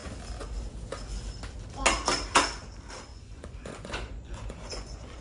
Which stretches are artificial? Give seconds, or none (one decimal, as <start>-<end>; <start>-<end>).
3.1-5.2

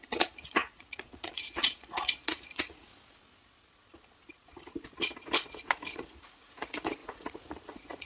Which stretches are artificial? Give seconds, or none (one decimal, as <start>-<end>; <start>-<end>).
0.0-2.9; 5.9-8.1

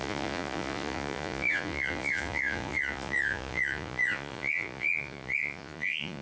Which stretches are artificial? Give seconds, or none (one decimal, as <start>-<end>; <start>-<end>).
0.0-6.2